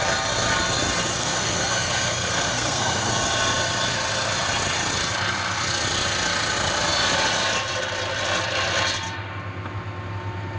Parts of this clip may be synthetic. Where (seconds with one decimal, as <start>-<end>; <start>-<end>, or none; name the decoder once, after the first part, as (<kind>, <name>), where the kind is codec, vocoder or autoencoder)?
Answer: 1.2-3.1 (codec, SNAC)